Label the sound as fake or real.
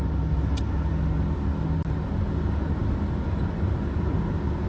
real